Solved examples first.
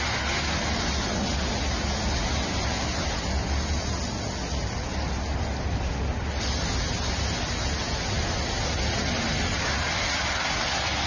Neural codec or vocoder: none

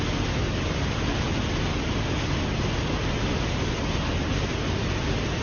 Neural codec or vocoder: none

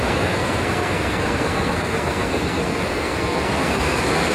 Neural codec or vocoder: codec, SNAC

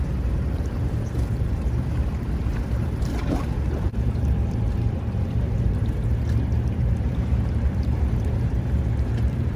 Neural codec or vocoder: vocoder, BigVGAN v2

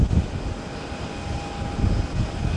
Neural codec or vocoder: none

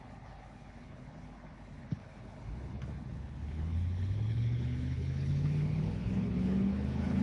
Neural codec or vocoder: codec, HILCodec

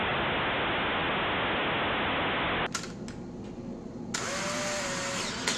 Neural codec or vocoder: none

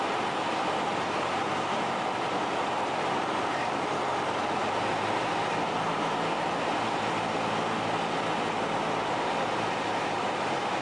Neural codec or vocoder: none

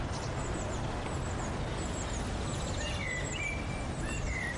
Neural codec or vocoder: none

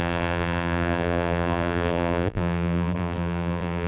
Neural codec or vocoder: vocoder, BigVGAN v2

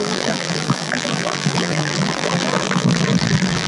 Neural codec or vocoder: vocoder, BigVGAN v2